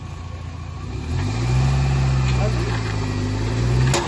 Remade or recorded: recorded